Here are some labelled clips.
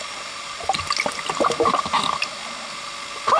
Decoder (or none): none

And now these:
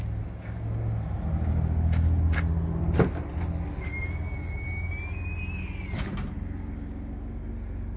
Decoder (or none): none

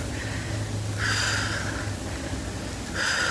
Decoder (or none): none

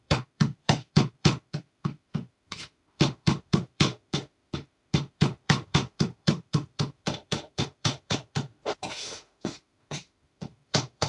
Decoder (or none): autoencoder, DAC-VAE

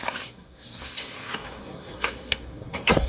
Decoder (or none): codec, SNAC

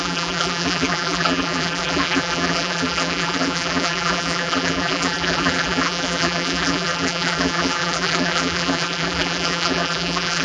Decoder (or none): vocoder, BigVGAN v2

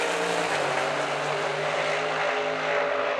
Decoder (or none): none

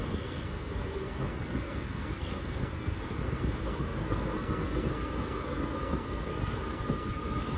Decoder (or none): codec, SNAC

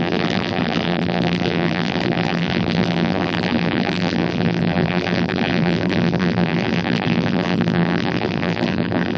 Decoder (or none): vocoder, BigVGAN v2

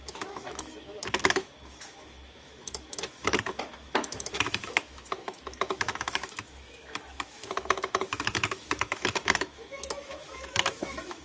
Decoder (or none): autoencoder, DAC-VAE